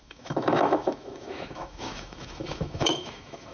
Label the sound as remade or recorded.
remade